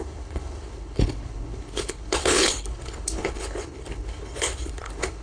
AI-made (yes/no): yes